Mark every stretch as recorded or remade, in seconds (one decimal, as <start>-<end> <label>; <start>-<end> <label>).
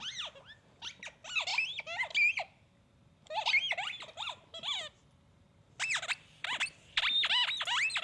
0.0-8.0 recorded